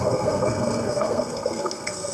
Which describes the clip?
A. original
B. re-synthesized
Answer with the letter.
B